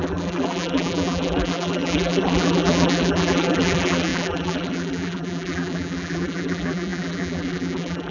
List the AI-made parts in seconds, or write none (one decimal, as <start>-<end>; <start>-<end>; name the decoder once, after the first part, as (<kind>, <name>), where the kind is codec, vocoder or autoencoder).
0.0-8.1 (vocoder, BigVGAN v2)

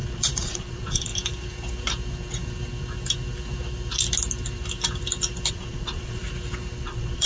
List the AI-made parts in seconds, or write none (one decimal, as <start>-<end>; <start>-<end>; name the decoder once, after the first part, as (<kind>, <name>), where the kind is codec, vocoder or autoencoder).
0.0-1.1 (vocoder, Vocos); 5.5-6.2; 6.8-7.3

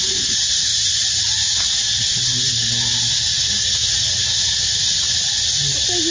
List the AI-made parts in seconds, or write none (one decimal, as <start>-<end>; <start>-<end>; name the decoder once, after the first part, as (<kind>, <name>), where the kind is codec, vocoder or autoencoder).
none

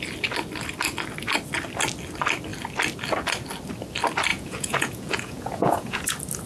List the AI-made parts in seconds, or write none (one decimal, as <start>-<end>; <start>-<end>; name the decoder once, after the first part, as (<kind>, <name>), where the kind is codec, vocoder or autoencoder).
4.3-6.1 (vocoder, Vocos)

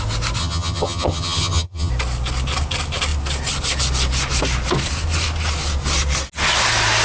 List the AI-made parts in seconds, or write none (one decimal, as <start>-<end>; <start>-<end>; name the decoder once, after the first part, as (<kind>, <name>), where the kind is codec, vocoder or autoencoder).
0.4-1.9 (vocoder, HiFi-GAN)